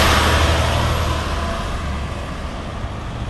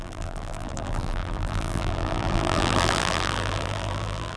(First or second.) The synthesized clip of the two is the second